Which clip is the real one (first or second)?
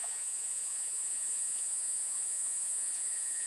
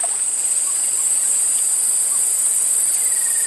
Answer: second